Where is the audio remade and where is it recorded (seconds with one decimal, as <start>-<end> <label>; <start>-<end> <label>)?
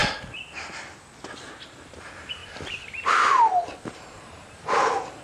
0.0-2.0 recorded; 2.0-2.4 remade; 2.4-3.8 recorded; 3.8-5.2 remade